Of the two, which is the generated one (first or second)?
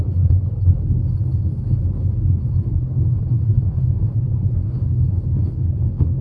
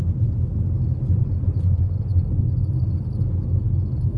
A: first